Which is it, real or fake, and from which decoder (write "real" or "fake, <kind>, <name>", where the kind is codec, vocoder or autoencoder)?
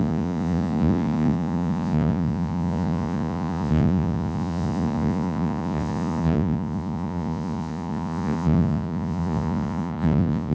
fake, vocoder, Vocos